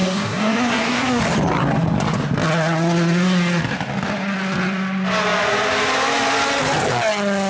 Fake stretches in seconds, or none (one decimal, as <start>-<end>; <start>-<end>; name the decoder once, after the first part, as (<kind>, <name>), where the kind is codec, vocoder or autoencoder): 0.0-1.2 (codec, SNAC)